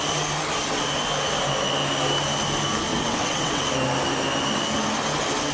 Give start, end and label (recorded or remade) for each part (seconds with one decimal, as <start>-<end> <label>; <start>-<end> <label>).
0.0-2.9 recorded; 2.9-3.6 remade; 3.6-5.5 recorded

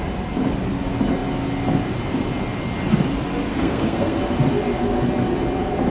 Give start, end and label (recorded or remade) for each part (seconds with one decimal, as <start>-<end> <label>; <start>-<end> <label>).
0.0-3.5 recorded; 3.5-4.2 remade; 4.2-5.9 recorded

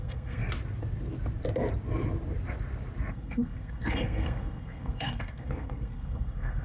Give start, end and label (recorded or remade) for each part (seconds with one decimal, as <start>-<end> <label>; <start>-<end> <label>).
0.0-0.4 remade; 0.4-3.1 recorded; 3.1-6.6 remade

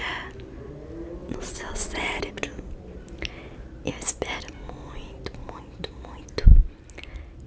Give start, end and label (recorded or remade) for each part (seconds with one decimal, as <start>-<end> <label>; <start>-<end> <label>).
0.0-1.2 recorded; 1.2-2.3 remade; 2.3-7.5 recorded